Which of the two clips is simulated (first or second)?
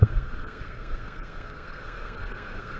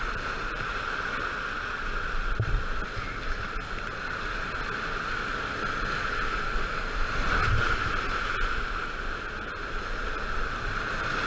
first